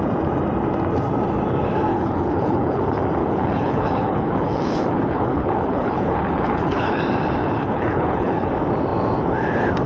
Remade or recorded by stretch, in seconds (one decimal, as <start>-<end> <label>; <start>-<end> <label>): 0.0-1.9 recorded; 1.9-2.8 remade; 2.8-3.2 recorded; 3.2-7.0 remade; 7.0-7.4 recorded; 7.4-8.5 remade; 8.5-9.9 recorded